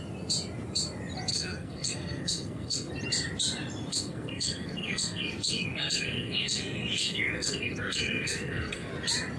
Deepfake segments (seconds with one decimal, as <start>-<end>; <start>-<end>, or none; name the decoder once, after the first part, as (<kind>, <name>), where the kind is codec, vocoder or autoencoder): 1.3-2.9 (codec, SNAC); 3.9-8.9